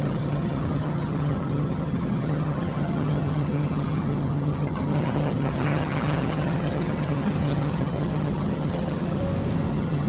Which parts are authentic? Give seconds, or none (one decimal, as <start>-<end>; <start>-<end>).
9.2-9.7